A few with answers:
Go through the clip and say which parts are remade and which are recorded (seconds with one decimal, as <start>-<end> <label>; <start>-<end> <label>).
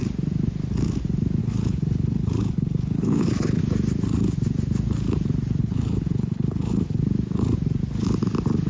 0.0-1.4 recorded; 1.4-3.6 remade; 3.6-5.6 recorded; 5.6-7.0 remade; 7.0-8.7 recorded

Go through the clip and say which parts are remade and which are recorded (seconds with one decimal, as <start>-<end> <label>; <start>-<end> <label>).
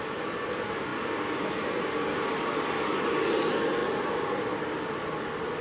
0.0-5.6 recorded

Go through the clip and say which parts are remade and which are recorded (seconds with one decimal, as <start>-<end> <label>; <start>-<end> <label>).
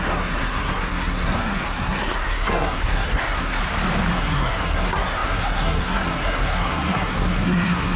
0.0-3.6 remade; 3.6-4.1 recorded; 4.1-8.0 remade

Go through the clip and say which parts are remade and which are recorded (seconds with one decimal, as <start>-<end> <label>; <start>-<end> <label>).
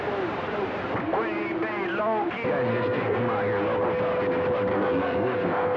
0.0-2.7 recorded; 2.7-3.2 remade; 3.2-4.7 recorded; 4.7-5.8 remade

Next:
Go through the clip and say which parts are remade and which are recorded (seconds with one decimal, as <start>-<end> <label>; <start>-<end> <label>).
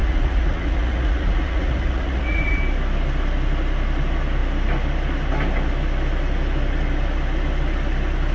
0.0-2.6 remade; 2.6-8.3 recorded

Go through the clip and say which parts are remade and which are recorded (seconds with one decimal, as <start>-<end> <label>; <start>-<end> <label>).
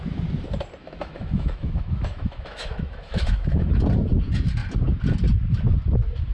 0.0-0.8 recorded; 0.8-3.7 remade; 3.7-6.3 recorded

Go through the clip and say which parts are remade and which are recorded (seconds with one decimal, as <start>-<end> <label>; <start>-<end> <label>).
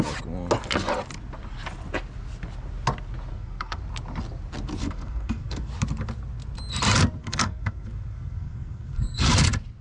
0.0-3.3 recorded; 3.3-3.8 remade; 3.8-4.8 recorded; 4.8-5.7 remade; 5.7-7.2 recorded; 7.2-9.3 remade; 9.3-9.8 recorded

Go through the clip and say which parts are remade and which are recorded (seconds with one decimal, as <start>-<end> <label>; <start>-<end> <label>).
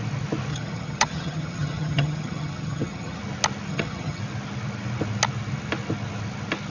0.0-0.5 recorded; 0.5-3.2 remade; 3.2-3.7 recorded; 3.7-4.2 remade; 4.2-6.7 recorded